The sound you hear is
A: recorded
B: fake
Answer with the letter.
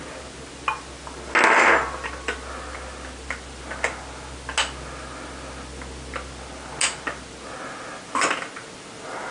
A